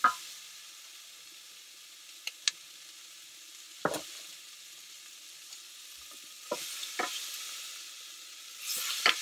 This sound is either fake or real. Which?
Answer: real